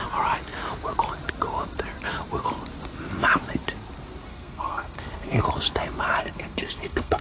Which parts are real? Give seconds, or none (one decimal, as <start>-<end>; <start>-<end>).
0.0-4.3; 5.4-6.2